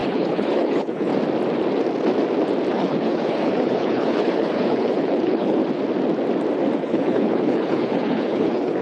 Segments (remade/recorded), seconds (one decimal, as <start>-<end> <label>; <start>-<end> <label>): 0.0-1.1 remade; 1.1-2.7 recorded; 2.7-5.6 remade; 5.6-6.8 recorded; 6.8-8.8 remade